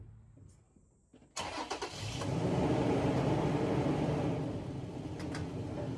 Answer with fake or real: real